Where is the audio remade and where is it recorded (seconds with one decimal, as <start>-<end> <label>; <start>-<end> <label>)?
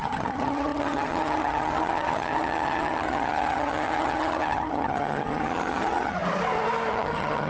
0.0-6.2 remade; 6.2-6.9 recorded; 6.9-7.5 remade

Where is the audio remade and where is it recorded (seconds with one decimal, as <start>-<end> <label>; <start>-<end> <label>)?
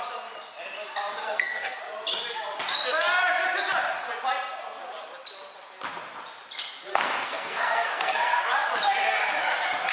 0.0-1.2 recorded; 1.2-1.8 remade; 1.8-6.9 recorded; 6.9-8.4 remade; 8.4-9.9 recorded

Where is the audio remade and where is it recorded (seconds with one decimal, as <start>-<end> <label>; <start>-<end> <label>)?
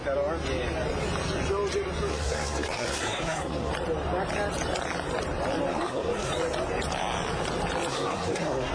0.0-2.1 recorded; 2.1-3.7 remade; 3.7-5.7 recorded; 5.7-6.3 remade; 6.3-7.9 recorded; 7.9-8.7 remade